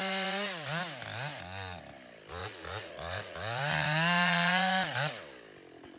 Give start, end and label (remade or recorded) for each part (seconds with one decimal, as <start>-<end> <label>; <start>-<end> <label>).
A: 0.0-0.8 remade; 0.8-2.4 recorded; 2.4-5.1 remade; 5.1-6.0 recorded